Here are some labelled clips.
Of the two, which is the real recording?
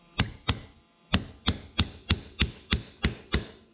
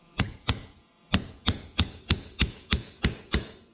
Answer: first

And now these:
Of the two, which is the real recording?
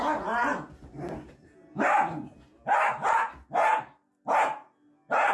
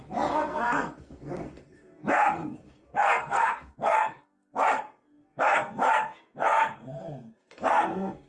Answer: first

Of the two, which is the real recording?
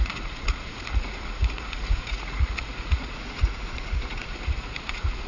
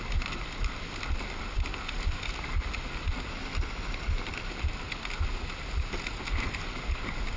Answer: second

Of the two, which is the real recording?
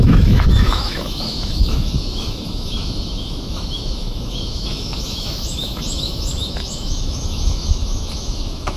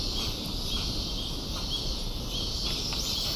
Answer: second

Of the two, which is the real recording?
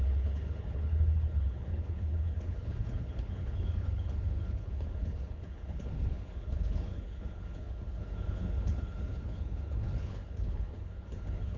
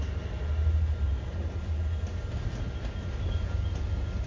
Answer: second